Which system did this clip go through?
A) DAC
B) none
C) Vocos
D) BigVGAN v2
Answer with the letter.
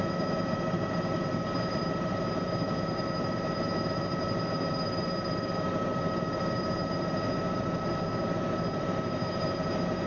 D